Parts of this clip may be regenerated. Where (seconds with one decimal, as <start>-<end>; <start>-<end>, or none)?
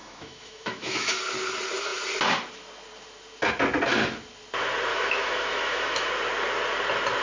0.0-1.2; 4.9-6.1